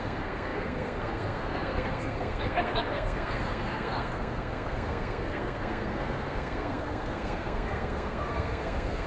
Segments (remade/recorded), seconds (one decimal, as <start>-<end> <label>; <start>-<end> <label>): 0.0-9.1 remade